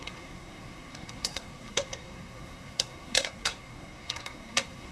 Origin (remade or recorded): remade